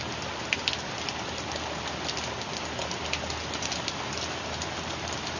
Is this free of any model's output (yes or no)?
yes